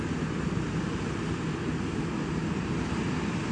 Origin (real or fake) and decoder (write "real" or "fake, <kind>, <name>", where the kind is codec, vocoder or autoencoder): real